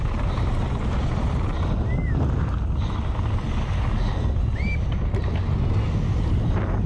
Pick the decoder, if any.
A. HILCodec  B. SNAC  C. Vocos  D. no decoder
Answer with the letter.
D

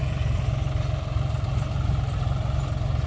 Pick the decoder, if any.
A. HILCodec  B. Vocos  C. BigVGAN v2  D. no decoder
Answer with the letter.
D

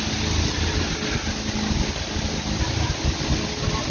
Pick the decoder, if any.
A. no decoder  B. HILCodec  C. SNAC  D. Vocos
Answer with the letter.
A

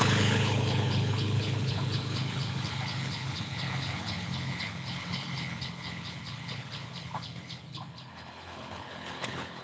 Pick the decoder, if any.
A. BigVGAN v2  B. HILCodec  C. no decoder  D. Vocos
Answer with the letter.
B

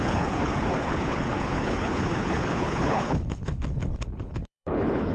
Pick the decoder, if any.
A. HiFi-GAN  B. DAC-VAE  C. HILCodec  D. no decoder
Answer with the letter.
C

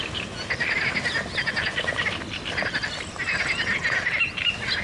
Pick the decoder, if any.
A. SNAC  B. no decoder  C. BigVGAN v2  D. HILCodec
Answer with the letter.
B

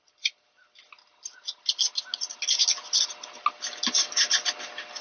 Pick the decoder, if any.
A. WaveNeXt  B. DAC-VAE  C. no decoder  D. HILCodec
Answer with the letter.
C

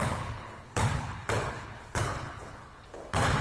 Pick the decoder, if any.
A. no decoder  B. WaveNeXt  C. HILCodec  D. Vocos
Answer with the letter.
C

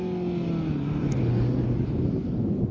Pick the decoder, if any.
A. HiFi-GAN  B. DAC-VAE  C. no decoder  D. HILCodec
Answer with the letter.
C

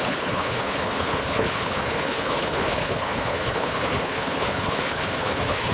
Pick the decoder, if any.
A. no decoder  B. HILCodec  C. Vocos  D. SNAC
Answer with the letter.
B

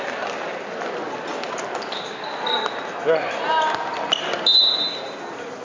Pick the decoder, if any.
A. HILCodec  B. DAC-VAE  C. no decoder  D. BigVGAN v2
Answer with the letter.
C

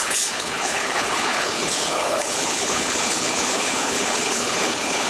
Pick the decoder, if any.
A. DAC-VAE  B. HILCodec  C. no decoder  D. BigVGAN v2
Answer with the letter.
B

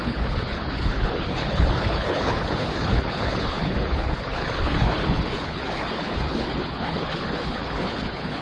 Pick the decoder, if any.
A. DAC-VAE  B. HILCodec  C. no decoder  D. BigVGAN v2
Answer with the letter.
B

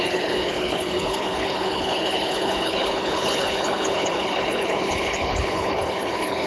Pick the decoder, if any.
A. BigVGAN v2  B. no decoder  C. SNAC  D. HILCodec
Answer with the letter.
D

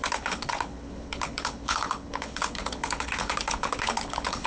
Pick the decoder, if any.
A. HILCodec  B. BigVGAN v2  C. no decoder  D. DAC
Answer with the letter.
A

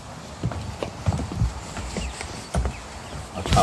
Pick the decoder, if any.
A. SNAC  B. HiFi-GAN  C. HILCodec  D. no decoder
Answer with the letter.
D